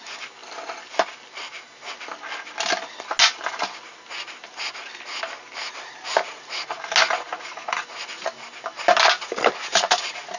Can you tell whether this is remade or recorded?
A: recorded